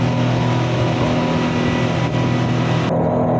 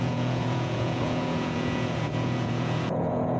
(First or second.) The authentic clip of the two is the first